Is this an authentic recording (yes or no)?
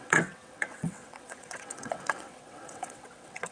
no